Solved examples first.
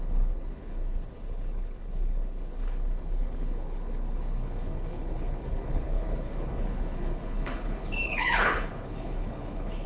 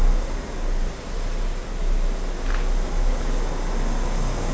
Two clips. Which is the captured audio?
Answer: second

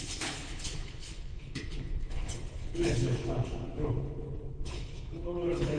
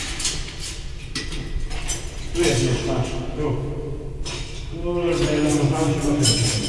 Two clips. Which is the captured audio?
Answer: second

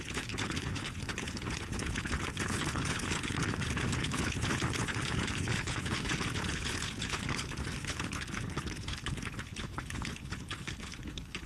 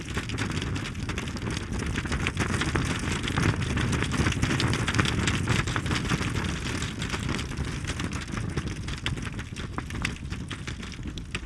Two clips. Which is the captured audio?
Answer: second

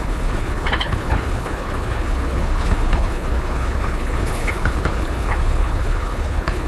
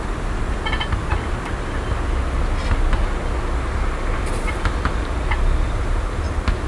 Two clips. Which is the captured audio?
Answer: second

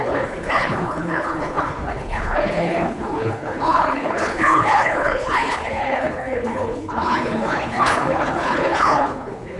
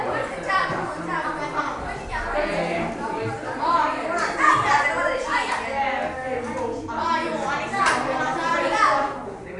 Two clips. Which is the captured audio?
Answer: second